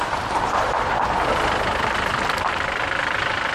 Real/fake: fake